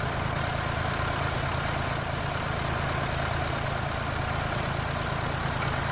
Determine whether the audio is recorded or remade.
recorded